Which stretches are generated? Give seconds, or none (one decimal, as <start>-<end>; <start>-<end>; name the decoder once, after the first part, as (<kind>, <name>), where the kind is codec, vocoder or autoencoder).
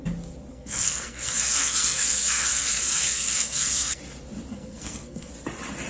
0.5-4.0 (codec, SNAC); 4.5-5.3